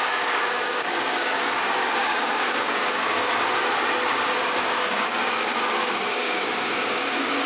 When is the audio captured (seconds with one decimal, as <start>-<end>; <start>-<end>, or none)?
3.1-4.6